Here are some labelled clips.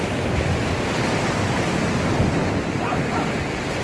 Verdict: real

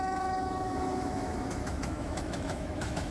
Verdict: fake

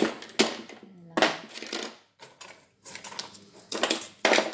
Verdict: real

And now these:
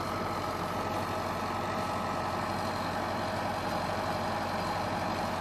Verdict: fake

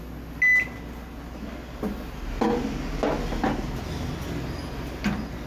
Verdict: real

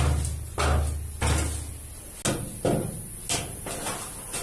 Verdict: real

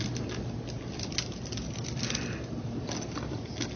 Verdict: real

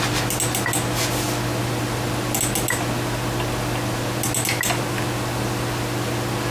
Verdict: real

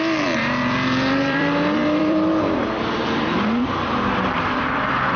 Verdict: fake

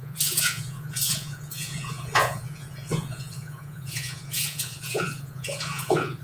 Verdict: fake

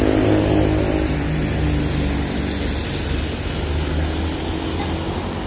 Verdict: real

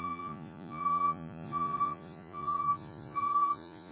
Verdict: fake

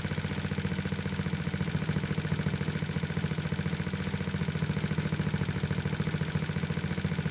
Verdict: real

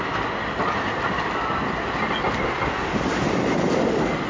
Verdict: real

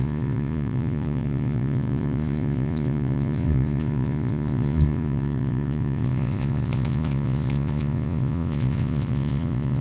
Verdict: fake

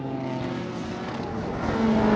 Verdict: real